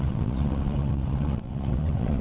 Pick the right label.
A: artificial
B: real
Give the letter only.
A